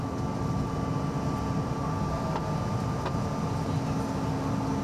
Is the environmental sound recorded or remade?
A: recorded